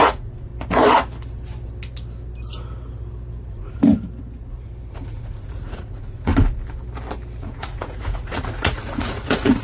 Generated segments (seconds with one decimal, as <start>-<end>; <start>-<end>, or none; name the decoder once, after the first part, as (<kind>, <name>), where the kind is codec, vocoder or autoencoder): 0.0-0.5 (vocoder, Vocos); 3.5-3.9; 4.9-6.3; 7.4-9.6